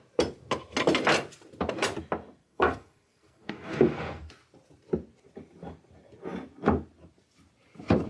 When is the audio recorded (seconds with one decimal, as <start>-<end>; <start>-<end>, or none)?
0.0-2.4; 4.3-8.1